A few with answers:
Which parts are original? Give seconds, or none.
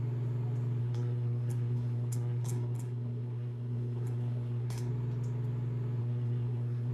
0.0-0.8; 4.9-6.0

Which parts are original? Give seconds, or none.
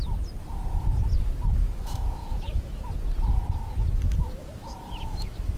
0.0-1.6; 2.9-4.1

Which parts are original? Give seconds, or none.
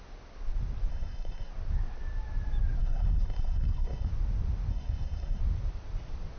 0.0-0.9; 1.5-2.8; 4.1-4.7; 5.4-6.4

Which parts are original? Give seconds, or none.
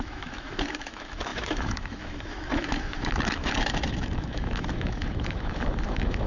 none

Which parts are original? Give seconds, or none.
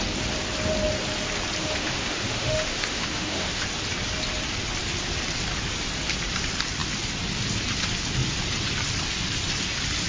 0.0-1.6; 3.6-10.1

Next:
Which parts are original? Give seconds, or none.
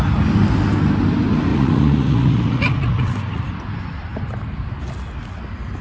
0.0-1.5; 3.4-5.8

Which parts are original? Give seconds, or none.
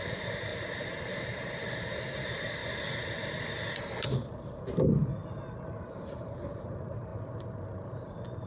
0.5-1.0; 2.6-3.8; 5.2-5.9; 7.1-7.9